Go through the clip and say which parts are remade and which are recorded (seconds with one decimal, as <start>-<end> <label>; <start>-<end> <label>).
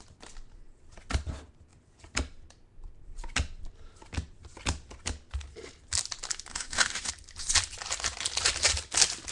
0.0-6.5 recorded; 6.5-7.1 remade; 7.1-9.3 recorded